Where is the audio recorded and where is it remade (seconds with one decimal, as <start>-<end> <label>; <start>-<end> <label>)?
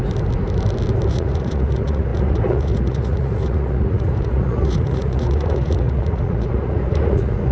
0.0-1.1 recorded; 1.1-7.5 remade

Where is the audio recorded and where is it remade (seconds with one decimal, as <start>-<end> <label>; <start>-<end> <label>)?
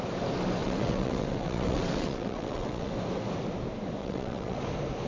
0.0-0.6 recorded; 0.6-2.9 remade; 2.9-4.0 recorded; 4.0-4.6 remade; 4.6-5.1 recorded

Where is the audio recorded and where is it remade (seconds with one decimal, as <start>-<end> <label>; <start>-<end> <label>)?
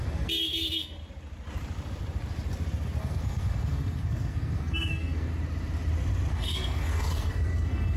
0.0-1.0 remade; 1.0-3.0 recorded; 3.0-5.3 remade; 5.3-6.3 recorded; 6.3-8.0 remade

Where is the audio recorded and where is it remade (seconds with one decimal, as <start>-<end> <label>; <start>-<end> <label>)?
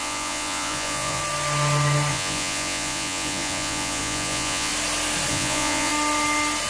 0.0-1.2 remade; 1.2-2.1 recorded; 2.1-4.7 remade; 4.7-5.3 recorded; 5.3-5.9 remade; 5.9-6.7 recorded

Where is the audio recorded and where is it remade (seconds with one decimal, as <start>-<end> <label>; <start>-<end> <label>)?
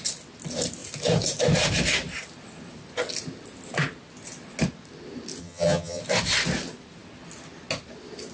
0.0-5.4 recorded; 5.4-6.0 remade; 6.0-8.3 recorded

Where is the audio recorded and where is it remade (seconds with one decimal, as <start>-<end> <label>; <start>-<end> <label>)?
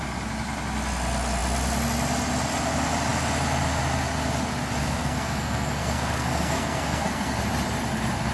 0.0-4.8 recorded; 4.8-7.4 remade; 7.4-8.3 recorded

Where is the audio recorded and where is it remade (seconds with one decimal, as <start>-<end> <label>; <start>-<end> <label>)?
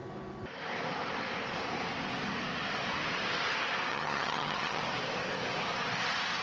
0.0-3.9 recorded; 3.9-4.8 remade; 4.8-6.4 recorded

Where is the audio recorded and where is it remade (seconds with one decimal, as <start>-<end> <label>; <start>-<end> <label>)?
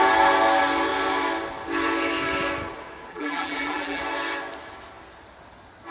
0.0-3.1 recorded; 3.1-4.0 remade; 4.0-5.9 recorded